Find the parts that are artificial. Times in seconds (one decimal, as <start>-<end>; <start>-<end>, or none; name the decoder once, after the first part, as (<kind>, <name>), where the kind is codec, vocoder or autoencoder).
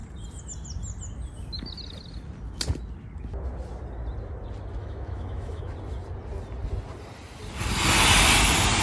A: 4.8-5.6 (autoencoder, DAC-VAE)